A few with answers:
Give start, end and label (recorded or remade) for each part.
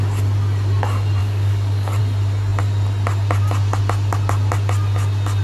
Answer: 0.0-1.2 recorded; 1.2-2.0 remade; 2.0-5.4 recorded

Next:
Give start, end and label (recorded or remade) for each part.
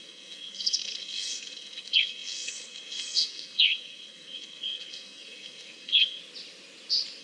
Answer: 0.0-6.2 remade; 6.2-7.2 recorded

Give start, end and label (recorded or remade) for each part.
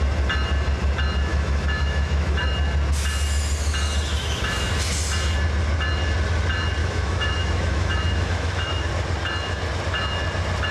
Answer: 0.0-1.3 recorded; 1.3-2.5 remade; 2.5-4.1 recorded; 4.1-4.7 remade; 4.7-6.8 recorded; 6.8-8.9 remade; 8.9-10.7 recorded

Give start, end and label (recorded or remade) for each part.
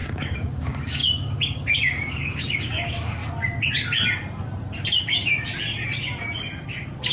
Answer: 0.0-3.2 remade; 3.2-5.0 recorded; 5.0-5.5 remade; 5.5-7.1 recorded